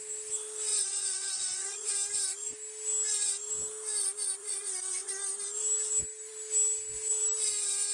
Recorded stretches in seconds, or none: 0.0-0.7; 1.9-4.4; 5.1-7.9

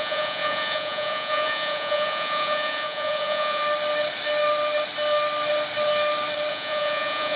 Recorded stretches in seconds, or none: 3.6-6.5

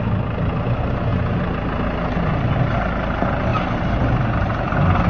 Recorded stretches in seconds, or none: 0.0-5.1

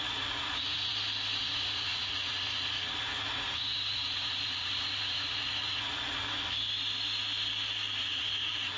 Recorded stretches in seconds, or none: 0.9-1.4; 6.2-8.0

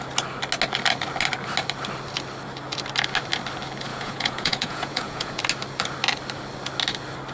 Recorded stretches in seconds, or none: 0.0-3.9; 5.4-7.3